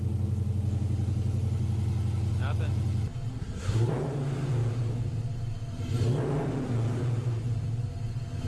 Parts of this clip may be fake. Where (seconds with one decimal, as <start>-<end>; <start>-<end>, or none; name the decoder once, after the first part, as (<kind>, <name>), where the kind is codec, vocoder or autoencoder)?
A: 3.3-3.9 (codec, SNAC)